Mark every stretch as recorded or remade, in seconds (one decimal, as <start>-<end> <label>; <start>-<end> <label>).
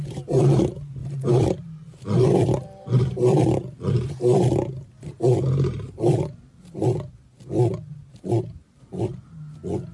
0.0-1.0 recorded; 1.0-1.6 remade; 1.6-9.9 recorded